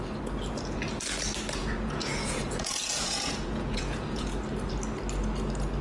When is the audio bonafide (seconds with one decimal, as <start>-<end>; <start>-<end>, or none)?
0.0-1.6; 4.3-5.8